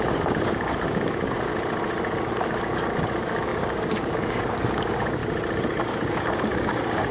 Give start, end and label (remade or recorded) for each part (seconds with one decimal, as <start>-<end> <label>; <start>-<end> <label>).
0.0-1.5 remade; 1.5-2.3 recorded; 2.3-5.2 remade; 5.2-5.8 recorded; 5.8-7.1 remade